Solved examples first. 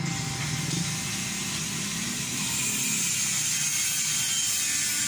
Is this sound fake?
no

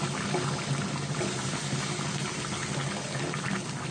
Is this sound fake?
no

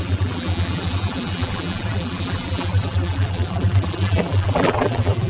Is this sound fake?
yes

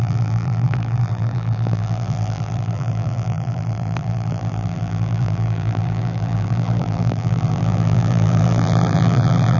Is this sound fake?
yes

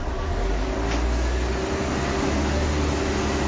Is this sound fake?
no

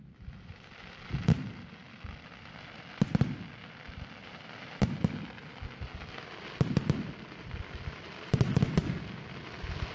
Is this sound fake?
no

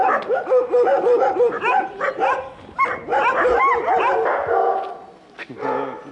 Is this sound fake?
no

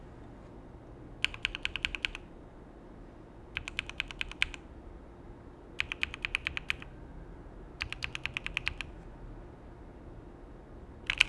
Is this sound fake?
no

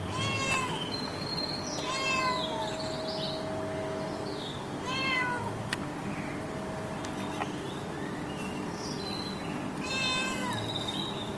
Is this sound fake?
no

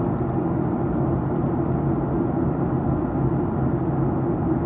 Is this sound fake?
no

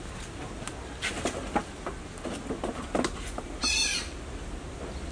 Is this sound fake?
no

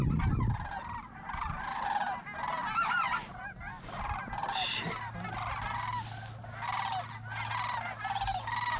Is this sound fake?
no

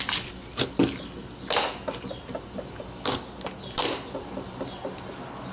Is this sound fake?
no